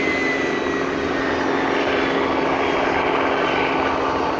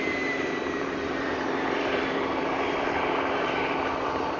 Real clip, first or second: first